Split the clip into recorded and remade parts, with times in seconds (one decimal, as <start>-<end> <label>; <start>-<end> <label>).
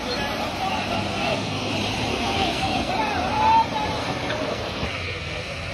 0.0-1.1 recorded; 1.1-1.7 remade; 1.7-2.1 recorded; 2.1-2.9 remade; 2.9-4.0 recorded; 4.0-5.7 remade